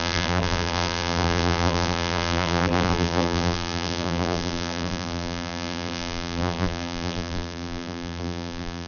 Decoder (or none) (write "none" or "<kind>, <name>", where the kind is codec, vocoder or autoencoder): vocoder, BigVGAN v2